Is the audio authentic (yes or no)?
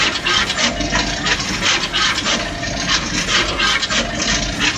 yes